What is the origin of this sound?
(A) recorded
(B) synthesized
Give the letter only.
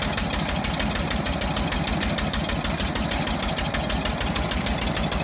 A